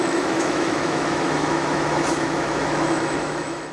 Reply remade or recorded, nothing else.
remade